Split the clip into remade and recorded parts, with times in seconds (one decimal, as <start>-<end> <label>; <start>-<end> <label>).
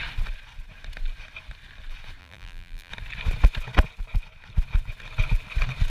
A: 0.0-2.2 recorded; 2.2-2.9 remade; 2.9-5.9 recorded